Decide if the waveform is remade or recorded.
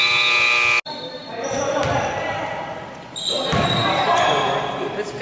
recorded